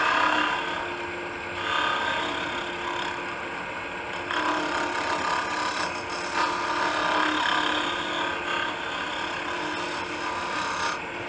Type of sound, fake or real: real